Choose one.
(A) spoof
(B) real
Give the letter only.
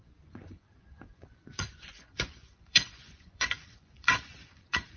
A